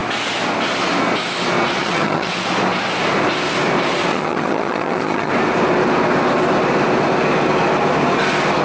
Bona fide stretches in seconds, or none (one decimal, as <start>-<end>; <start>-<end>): 0.0-1.8; 2.3-4.1; 5.3-8.6